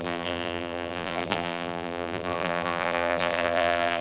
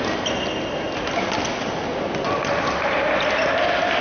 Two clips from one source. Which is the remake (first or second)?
first